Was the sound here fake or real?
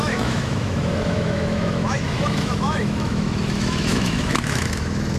fake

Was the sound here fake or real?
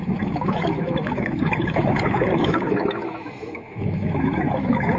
fake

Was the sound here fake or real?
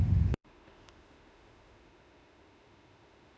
fake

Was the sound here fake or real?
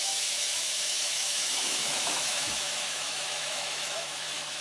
fake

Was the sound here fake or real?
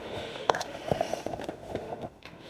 fake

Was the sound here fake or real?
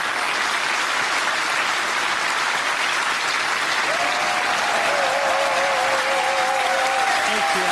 real